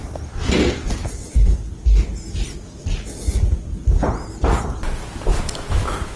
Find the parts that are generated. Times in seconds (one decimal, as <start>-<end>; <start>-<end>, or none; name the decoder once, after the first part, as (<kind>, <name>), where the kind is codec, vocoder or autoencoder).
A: 1.0-1.5 (vocoder, BigVGAN v2)

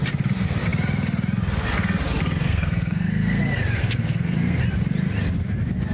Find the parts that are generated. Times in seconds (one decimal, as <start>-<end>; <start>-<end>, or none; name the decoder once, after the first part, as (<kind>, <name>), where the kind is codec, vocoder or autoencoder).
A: 2.4-3.4 (codec, SNAC); 3.8-4.6

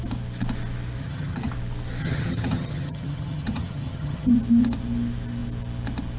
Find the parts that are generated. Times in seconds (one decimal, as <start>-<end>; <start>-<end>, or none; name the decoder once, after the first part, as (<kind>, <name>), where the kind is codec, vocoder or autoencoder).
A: 1.0-1.5 (vocoder, HiFi-GAN); 2.0-4.3

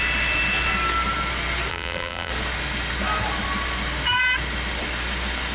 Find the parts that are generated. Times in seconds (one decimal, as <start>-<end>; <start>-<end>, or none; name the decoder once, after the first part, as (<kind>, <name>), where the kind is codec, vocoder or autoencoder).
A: 1.7-2.3 (vocoder, BigVGAN v2)

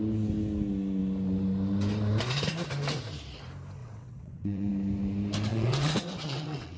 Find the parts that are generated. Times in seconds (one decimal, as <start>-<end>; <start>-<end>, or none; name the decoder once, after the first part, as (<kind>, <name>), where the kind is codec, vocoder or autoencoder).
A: 3.8-4.7 (vocoder, WaveNeXt); 5.5-6.8

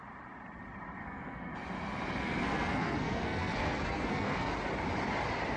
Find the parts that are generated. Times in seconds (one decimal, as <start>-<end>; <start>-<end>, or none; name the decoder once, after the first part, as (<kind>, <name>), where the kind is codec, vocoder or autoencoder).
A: 1.0-1.5 (codec, SNAC); 2.2-4.5

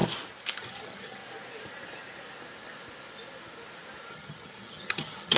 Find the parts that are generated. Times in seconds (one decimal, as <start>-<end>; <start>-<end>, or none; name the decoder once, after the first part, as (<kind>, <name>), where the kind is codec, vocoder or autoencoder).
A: 0.6-1.2 (vocoder, HiFi-GAN); 4.1-5.4

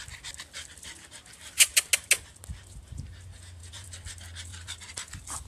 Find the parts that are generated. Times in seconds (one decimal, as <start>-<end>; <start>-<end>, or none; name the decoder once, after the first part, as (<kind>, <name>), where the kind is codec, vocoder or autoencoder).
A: 0.6-1.8 (vocoder, BigVGAN v2); 3.6-4.1; 4.5-5.5